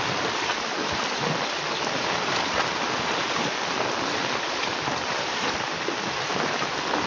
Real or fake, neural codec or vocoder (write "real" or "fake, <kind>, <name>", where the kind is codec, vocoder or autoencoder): real